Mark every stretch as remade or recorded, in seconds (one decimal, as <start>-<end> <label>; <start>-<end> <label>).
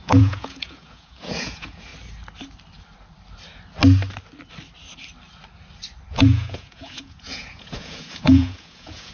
0.0-1.9 remade; 1.9-6.1 recorded; 6.1-9.1 remade